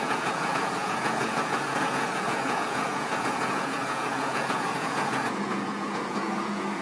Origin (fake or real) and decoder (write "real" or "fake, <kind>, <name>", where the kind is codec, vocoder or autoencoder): fake, vocoder, Vocos